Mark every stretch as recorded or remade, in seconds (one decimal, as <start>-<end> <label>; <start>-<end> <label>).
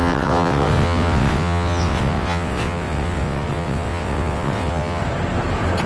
0.0-5.0 remade; 5.0-5.9 recorded